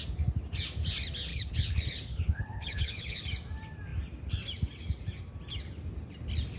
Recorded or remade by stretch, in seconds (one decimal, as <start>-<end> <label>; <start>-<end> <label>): 0.0-1.3 recorded; 1.3-3.2 remade; 3.2-6.6 recorded